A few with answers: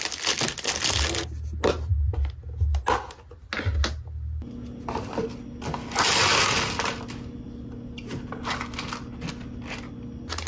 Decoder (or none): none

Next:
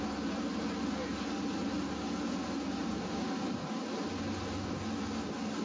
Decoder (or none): none